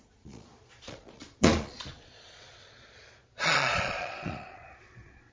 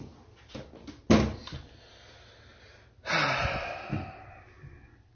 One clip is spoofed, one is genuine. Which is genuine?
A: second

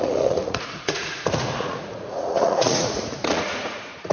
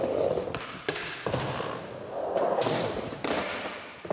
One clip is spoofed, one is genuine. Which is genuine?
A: second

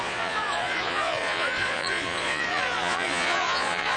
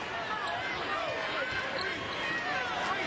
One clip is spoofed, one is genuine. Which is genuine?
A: second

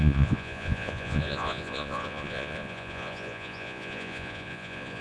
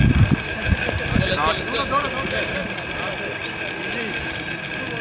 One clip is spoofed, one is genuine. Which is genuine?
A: second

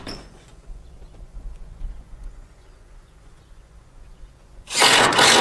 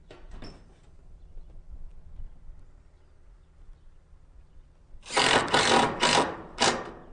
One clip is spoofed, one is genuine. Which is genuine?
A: second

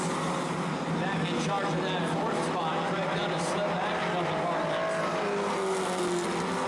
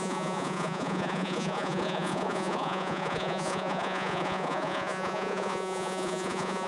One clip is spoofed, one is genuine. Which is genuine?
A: first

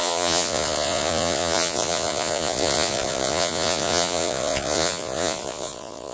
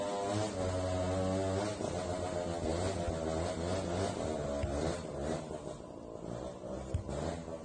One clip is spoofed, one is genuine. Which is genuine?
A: second